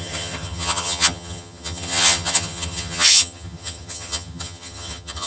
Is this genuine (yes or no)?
no